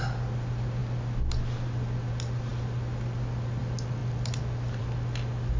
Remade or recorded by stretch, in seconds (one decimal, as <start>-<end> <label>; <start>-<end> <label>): 0.0-4.0 recorded; 4.0-4.8 remade; 4.8-5.6 recorded